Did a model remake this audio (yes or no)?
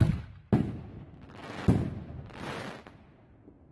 no